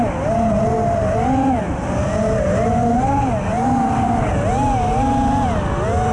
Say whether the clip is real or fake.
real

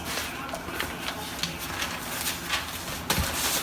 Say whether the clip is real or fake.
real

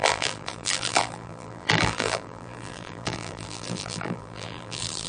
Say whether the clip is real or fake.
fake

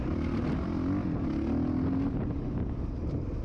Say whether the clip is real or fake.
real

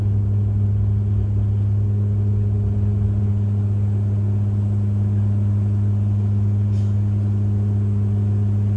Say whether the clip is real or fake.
real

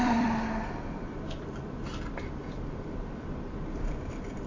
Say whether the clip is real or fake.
fake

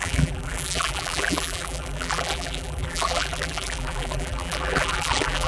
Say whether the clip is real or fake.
fake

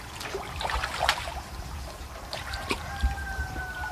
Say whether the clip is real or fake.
fake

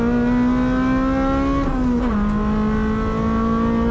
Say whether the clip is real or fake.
real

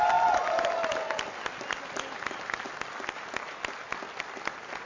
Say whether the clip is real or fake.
real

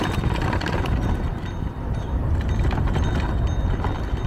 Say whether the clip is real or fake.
real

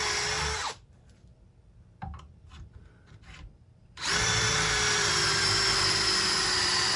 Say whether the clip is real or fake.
fake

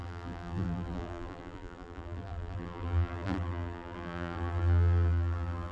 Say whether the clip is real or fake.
fake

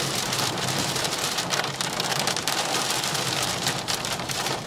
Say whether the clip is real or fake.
fake